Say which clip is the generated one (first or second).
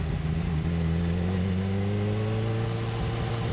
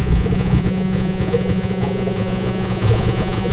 second